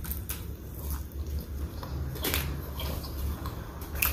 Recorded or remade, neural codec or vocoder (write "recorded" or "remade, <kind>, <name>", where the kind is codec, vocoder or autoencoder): recorded